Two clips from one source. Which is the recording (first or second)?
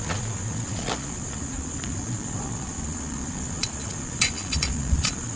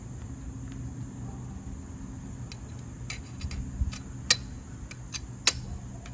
second